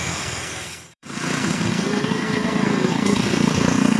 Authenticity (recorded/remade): remade